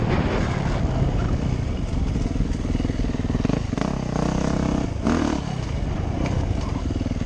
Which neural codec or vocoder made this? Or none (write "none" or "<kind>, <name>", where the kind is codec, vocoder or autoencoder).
none